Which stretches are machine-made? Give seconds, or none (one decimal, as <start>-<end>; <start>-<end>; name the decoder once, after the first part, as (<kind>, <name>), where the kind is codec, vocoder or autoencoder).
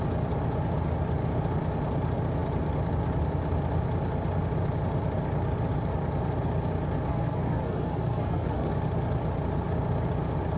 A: 7.1-8.7 (codec, SNAC)